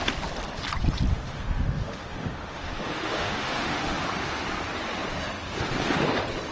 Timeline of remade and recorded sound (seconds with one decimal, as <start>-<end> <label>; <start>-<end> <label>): 0.0-1.1 recorded; 1.1-4.0 remade; 4.0-6.5 recorded